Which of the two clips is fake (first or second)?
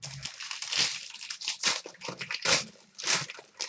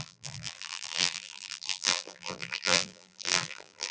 second